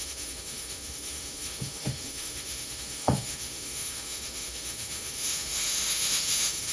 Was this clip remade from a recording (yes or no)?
yes